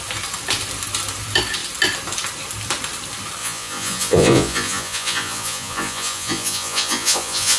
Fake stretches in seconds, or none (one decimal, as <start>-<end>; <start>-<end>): 3.4-7.6